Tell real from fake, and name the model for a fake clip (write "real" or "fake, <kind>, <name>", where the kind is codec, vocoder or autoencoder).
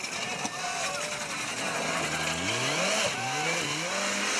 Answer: real